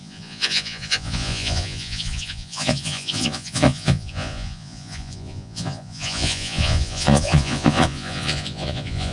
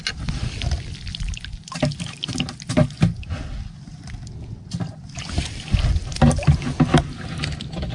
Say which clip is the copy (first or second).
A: first